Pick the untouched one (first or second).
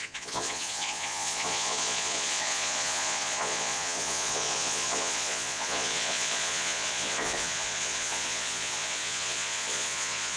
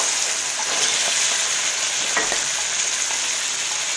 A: second